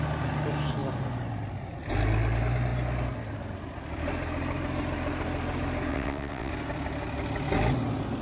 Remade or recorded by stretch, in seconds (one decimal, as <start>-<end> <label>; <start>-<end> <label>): 0.0-5.9 recorded; 5.9-6.5 remade; 6.5-8.2 recorded